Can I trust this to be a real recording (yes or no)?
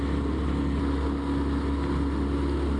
yes